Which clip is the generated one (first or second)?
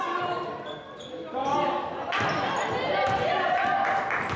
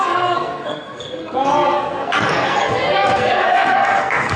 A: second